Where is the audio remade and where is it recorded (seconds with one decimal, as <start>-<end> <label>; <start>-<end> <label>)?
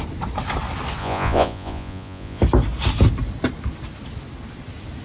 0.0-1.0 recorded; 1.0-2.4 remade; 2.4-5.0 recorded